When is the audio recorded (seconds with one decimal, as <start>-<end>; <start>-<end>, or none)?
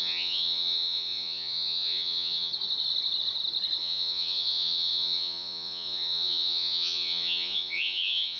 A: 2.5-3.8